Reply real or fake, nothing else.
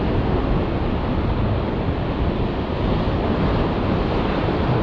real